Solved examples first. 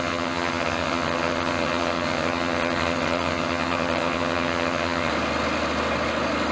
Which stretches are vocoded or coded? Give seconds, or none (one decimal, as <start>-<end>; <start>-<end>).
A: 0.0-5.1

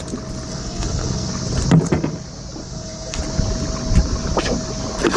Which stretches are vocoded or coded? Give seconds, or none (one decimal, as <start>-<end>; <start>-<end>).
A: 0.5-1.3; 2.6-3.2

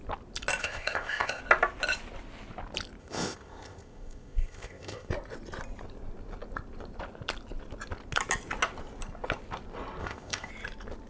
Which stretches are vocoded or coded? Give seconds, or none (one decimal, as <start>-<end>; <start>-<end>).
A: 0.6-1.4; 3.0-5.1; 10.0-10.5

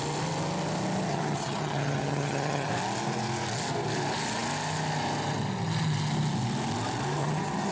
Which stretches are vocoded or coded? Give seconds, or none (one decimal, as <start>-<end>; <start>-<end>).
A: 1.1-2.7; 7.2-7.7

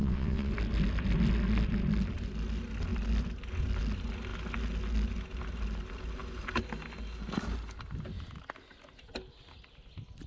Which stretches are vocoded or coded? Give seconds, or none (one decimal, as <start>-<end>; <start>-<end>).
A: 0.0-0.5

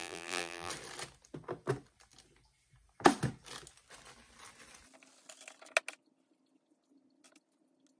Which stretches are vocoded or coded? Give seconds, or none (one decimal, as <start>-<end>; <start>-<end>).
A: 0.0-0.7